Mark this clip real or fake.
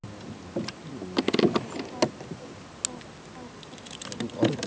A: real